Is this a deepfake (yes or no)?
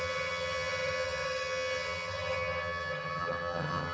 yes